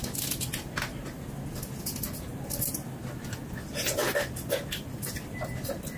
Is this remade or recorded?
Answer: recorded